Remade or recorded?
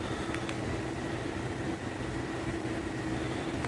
recorded